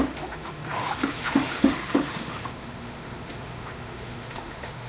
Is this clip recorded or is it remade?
remade